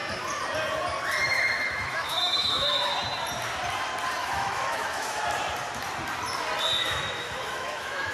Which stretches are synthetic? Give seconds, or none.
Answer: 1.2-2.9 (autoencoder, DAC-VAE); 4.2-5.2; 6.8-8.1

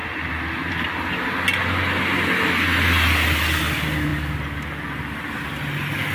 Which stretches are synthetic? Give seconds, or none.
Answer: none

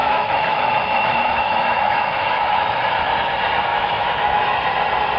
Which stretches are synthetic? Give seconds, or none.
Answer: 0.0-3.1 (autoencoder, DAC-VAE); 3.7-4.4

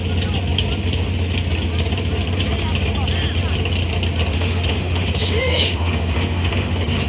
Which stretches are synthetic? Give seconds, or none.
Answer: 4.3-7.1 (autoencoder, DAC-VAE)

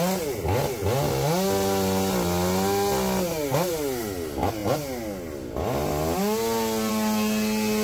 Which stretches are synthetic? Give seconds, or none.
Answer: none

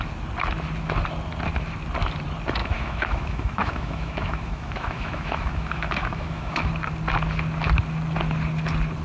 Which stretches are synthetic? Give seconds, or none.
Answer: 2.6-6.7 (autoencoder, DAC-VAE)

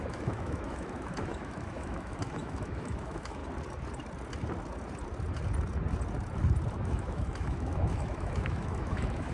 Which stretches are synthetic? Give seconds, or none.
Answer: 0.0-3.4 (autoencoder, DAC-VAE); 6.7-9.3

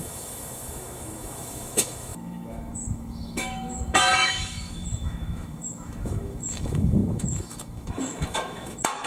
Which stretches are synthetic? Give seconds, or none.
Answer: 0.0-9.1 (autoencoder, DAC-VAE)